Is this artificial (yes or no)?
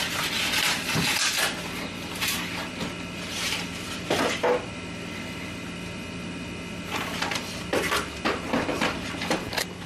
yes